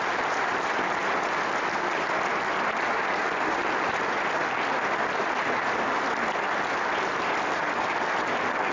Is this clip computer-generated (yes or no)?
no